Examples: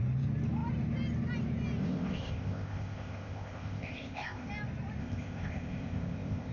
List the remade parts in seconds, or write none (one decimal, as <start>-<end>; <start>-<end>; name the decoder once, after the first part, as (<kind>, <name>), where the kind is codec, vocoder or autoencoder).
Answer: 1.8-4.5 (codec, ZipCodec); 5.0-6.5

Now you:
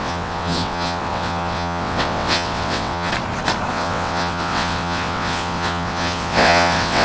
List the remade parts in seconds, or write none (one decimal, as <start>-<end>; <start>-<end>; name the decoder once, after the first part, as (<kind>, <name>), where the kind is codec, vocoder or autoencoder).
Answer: 0.0-3.1 (vocoder, WaveNeXt); 3.7-7.0

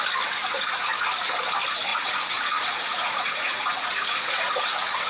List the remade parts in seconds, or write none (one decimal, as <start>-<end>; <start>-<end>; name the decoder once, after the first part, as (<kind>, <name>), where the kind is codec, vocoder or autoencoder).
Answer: 0.4-1.1 (vocoder, Vocos); 1.9-5.1

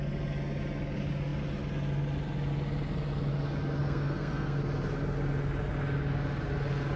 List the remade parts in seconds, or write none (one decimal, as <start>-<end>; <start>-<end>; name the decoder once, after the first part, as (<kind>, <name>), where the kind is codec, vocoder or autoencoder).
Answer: 3.8-4.6 (codec, SNAC)